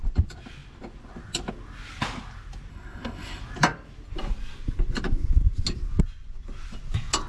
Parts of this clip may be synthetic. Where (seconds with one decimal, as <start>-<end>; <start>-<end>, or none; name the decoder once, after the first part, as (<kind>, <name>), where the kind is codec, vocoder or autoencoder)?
2.7-3.4 (codec, SNAC)